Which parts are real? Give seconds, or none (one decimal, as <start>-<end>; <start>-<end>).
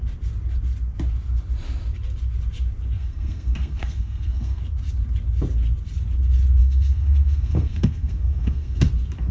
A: 0.0-3.0; 4.6-6.6; 8.9-9.3